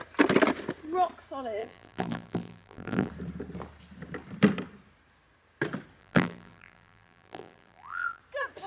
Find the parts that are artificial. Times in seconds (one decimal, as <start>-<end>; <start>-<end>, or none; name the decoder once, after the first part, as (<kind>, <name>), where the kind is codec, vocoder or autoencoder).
1.6-3.1 (vocoder, BigVGAN v2); 6.0-8.2

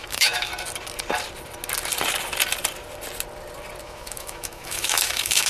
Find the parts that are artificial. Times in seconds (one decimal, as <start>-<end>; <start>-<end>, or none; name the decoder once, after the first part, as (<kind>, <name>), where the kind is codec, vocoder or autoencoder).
0.0-0.5 (autoencoder, DAC-VAE); 3.8-5.5

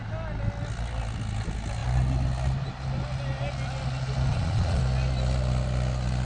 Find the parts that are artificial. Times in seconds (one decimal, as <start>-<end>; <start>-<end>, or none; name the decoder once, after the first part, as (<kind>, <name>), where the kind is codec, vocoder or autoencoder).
4.3-4.8 (vocoder, Vocos)

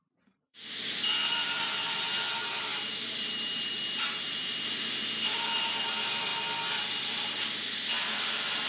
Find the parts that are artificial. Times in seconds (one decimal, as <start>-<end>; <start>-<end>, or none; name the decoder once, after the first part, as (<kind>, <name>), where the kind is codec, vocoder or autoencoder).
0.0-6.3 (vocoder, BigVGAN v2); 7.0-8.7